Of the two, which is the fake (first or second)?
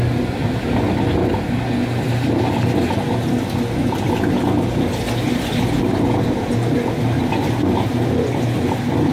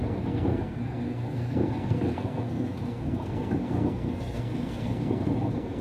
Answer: second